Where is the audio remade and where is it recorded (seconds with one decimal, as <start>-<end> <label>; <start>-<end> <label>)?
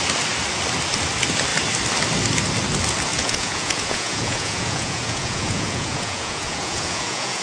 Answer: 0.0-3.1 recorded; 3.1-7.4 remade